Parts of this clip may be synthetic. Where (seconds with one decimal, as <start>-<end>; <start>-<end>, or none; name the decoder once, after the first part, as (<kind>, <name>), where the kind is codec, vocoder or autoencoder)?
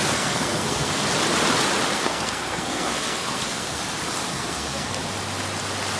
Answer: 0.0-1.0 (codec, SNAC); 1.9-3.8; 4.3-5.0